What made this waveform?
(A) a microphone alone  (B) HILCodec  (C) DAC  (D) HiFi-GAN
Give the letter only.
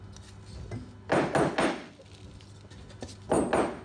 A